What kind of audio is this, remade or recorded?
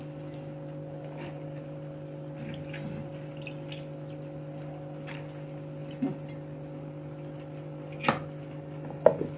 recorded